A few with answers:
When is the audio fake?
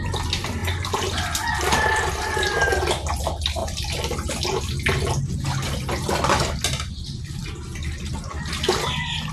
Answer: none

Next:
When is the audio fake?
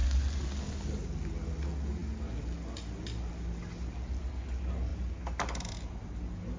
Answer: none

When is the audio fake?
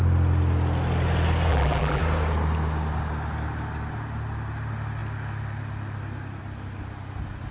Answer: 1.5-2.0 (vocoder, BigVGAN v2)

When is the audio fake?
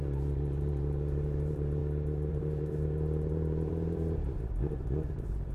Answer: 0.0-1.8 (vocoder, BigVGAN v2); 2.3-5.5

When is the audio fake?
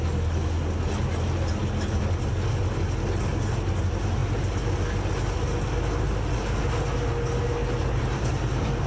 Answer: 7.6-8.9 (vocoder, BigVGAN v2)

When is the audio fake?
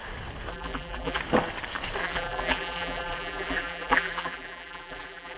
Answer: 0.5-1.2 (vocoder, BigVGAN v2); 2.0-5.4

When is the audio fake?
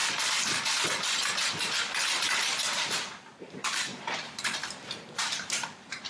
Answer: 3.2-6.1 (vocoder, BigVGAN v2)